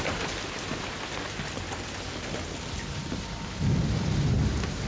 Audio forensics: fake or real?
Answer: real